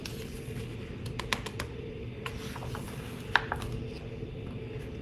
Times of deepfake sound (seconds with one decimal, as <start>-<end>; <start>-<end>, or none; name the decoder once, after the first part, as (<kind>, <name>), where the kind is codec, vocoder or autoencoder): none